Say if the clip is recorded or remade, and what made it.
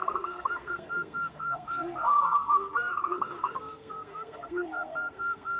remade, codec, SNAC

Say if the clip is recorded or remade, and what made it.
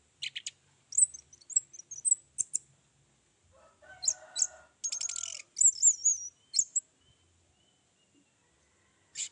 recorded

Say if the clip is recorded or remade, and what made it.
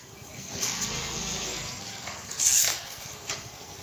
remade, codec, SNAC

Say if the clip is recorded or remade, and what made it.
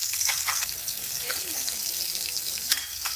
remade, codec, SNAC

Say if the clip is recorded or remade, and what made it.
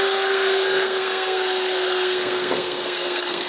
remade, codec, SNAC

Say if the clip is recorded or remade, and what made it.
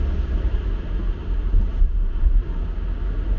recorded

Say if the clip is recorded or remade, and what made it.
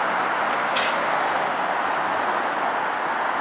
recorded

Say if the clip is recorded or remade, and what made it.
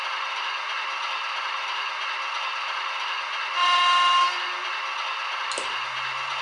recorded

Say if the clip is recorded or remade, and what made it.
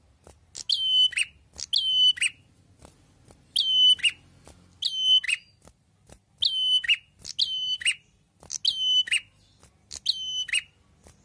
recorded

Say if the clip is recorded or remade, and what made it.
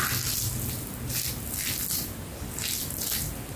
recorded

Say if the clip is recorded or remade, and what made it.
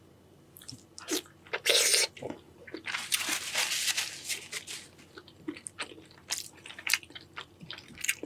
recorded